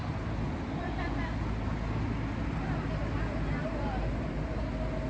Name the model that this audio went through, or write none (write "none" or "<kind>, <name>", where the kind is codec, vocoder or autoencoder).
none